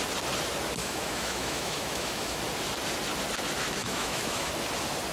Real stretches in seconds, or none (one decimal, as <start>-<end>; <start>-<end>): 0.0-0.8; 2.4-3.8; 4.5-5.1